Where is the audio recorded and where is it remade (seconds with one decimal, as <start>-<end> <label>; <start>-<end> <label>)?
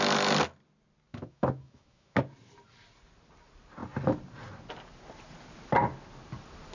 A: 0.0-1.1 recorded; 1.1-2.2 remade; 2.2-6.7 recorded